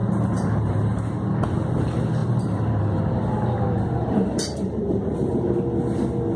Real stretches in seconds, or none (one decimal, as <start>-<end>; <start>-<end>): 1.0-2.2; 3.0-4.0; 5.3-6.4